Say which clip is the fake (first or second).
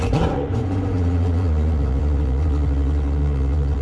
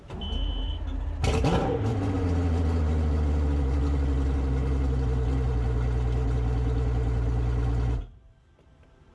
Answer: first